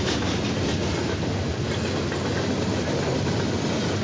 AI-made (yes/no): no